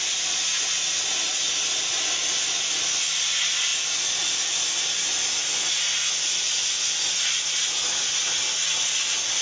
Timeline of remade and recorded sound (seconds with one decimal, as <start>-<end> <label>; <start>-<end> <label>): 0.0-9.4 recorded